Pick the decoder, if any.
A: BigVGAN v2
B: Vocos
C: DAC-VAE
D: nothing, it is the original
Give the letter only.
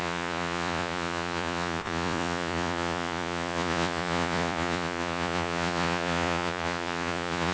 B